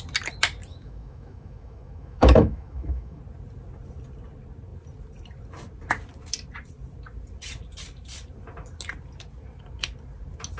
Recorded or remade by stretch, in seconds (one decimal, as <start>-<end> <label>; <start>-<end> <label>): 0.0-0.7 recorded; 0.7-3.2 remade; 3.2-10.6 recorded